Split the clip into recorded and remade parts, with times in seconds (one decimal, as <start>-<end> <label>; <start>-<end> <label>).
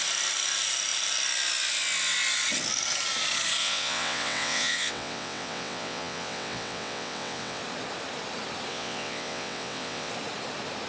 0.0-3.6 recorded; 3.6-7.6 remade; 7.6-8.7 recorded; 8.7-10.1 remade; 10.1-10.9 recorded